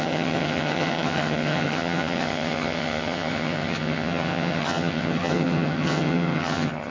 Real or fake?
fake